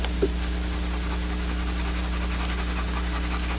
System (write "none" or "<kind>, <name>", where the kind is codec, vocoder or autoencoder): none